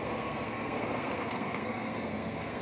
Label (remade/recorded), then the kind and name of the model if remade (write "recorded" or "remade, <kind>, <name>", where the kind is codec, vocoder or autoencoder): remade, codec, SNAC